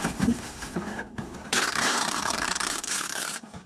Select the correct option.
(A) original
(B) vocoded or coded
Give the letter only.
B